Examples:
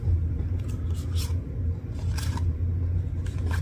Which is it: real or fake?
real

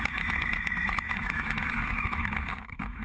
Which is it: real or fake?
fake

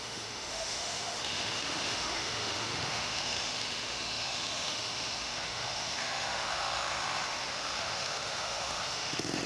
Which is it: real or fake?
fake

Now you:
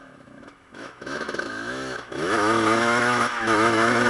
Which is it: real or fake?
fake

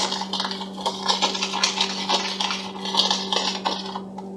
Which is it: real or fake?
real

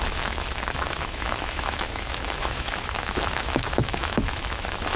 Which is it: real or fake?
fake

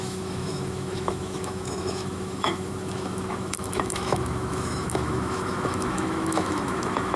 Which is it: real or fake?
fake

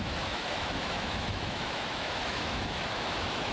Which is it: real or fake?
fake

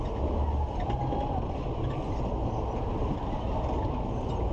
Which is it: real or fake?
real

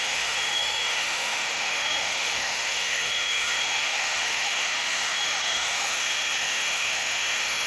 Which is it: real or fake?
fake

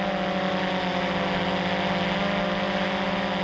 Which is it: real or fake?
real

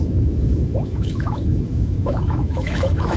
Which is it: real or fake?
fake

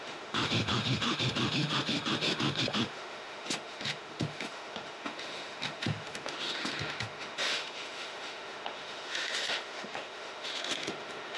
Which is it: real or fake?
fake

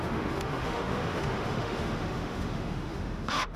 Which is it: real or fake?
fake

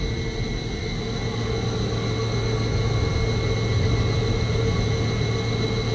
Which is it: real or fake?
real